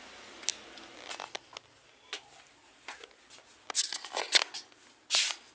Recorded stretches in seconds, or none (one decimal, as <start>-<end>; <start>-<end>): 0.0-5.5